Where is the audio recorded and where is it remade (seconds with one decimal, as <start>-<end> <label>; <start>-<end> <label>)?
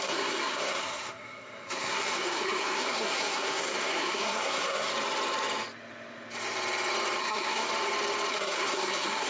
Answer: 0.0-4.9 remade; 4.9-7.2 recorded; 7.2-7.7 remade; 7.7-8.3 recorded; 8.3-9.3 remade